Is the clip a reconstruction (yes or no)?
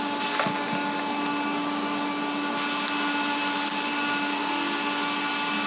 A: no